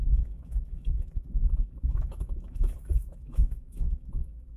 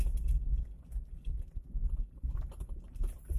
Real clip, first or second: second